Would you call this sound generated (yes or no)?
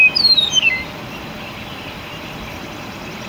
no